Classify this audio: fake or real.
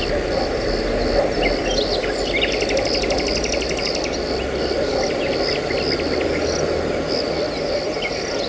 real